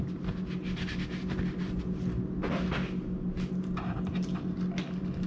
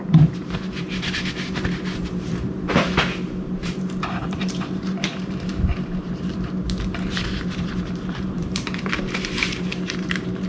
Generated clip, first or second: second